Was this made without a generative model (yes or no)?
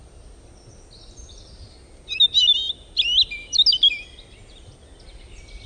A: yes